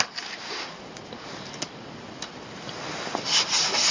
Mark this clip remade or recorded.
recorded